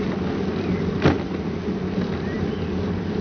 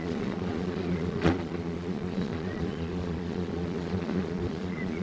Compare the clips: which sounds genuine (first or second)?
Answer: first